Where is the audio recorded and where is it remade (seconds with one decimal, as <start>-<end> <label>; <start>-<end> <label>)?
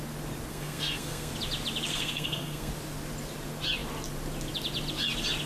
0.0-0.5 recorded; 0.5-1.3 remade; 1.3-1.9 recorded; 1.9-2.7 remade; 2.7-5.5 recorded